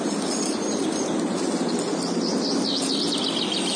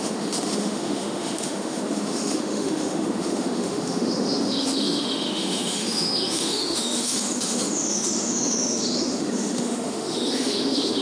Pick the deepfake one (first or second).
second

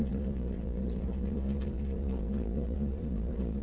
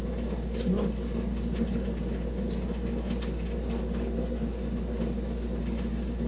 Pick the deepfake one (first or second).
first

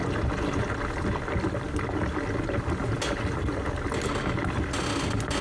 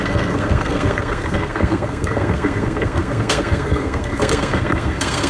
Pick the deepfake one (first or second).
second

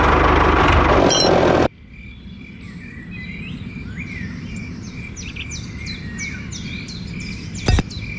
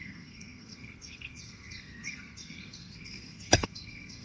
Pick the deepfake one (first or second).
second